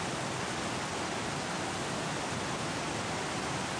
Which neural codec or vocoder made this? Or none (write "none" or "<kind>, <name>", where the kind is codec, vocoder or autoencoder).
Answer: none